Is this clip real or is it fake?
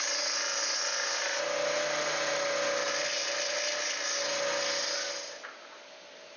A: real